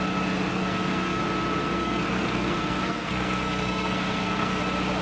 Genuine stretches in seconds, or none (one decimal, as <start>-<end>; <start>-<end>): 0.0-0.5; 1.2-1.6; 4.6-5.0